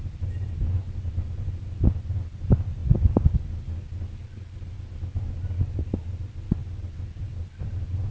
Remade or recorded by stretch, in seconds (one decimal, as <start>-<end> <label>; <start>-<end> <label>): 0.0-8.1 recorded